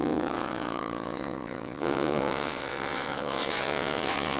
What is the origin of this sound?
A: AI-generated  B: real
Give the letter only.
A